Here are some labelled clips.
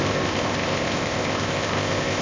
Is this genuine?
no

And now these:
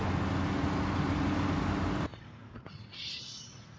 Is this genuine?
yes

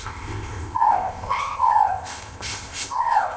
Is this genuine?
no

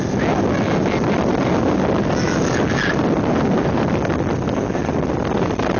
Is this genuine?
yes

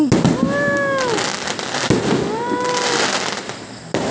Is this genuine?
yes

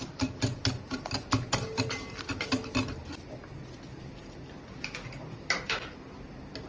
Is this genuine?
yes